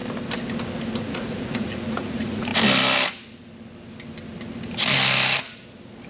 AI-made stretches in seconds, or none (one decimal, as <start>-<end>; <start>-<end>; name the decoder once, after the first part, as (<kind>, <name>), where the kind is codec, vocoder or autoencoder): 1.0-2.5 (vocoder, Vocos)